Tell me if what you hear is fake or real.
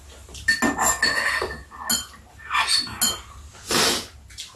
real